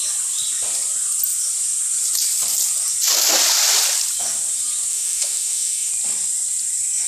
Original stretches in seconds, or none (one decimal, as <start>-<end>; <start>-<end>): 0.0-4.9; 5.9-7.1